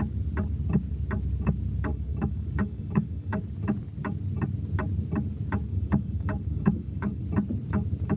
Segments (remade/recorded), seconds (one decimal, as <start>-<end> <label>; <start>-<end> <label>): 0.0-1.9 recorded; 1.9-3.4 remade; 3.4-5.7 recorded; 5.7-7.2 remade; 7.2-8.2 recorded